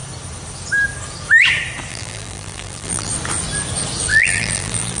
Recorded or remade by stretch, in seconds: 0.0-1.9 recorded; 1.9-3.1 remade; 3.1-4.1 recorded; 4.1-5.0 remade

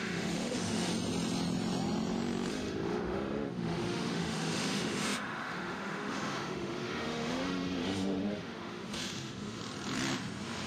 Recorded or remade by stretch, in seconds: 0.0-0.9 remade; 0.9-2.5 recorded; 2.5-9.6 remade; 9.6-10.7 recorded

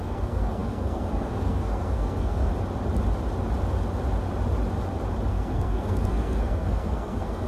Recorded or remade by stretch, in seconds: 0.0-2.5 remade; 2.5-5.3 recorded; 5.3-7.5 remade